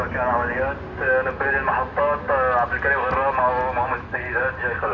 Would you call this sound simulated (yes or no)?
no